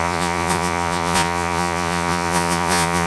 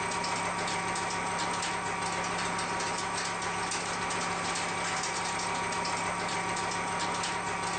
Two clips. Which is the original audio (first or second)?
second